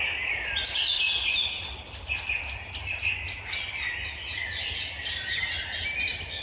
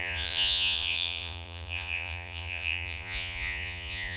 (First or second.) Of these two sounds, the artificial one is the second